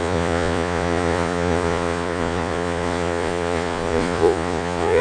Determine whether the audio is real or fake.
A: fake